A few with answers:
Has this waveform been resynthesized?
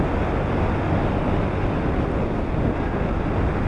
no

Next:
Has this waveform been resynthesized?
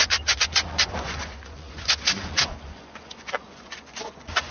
yes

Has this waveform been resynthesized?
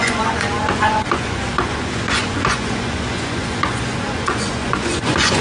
yes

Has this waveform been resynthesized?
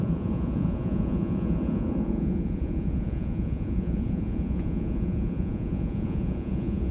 yes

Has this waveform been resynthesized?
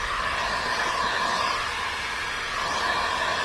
no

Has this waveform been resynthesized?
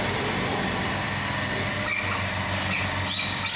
no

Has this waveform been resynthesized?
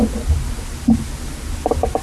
no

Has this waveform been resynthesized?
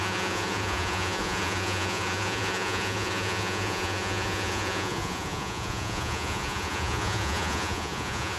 yes